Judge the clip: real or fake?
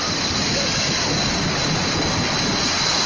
real